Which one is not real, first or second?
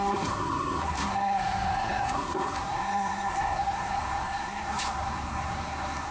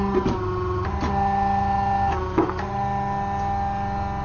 first